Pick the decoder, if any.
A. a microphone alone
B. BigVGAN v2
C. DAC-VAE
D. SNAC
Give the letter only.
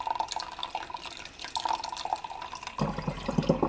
A